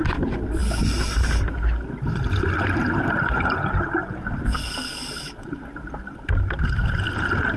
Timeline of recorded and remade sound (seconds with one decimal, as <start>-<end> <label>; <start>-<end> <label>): 0.0-7.6 recorded